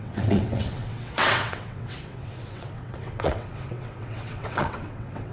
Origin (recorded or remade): remade